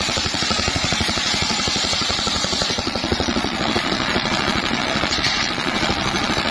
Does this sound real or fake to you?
fake